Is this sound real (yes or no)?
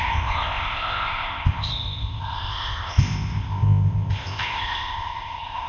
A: no